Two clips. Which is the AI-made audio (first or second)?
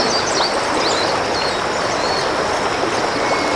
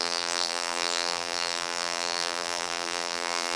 second